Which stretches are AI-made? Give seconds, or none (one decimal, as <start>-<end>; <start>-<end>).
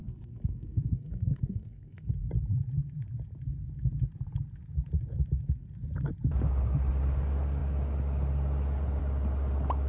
0.0-2.1